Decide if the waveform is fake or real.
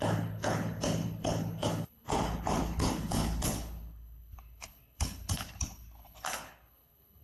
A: fake